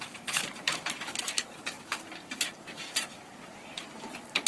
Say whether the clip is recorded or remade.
remade